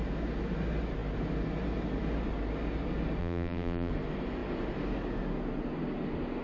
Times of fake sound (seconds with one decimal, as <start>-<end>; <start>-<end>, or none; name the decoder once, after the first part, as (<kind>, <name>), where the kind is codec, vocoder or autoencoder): 3.2-3.9 (vocoder, BigVGAN v2)